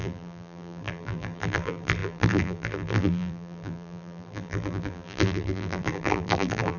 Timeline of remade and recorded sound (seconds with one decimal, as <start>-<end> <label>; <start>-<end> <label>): 0.0-6.8 remade